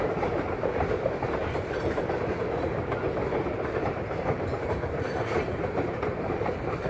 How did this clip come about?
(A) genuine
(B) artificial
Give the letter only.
B